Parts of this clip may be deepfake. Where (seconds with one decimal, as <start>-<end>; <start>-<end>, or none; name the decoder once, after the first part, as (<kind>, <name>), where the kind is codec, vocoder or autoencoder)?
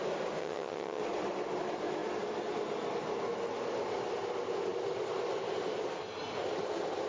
0.4-1.0 (vocoder, HiFi-GAN)